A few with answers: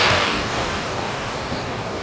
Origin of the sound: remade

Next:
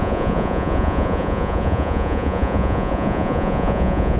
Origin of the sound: remade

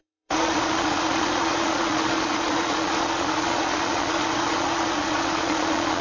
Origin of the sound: remade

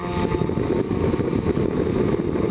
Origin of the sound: recorded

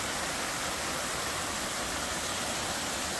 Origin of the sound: recorded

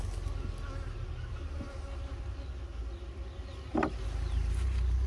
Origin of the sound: recorded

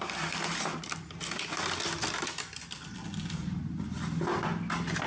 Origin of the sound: recorded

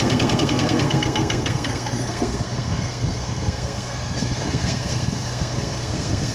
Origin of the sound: remade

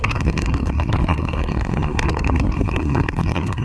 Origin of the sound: remade